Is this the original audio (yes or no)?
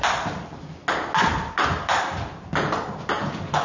yes